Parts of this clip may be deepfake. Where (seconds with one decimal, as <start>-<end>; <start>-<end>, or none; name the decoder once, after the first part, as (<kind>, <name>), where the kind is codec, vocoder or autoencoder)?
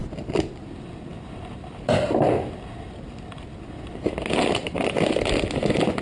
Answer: none